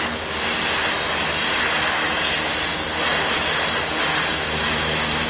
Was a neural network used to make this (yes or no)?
no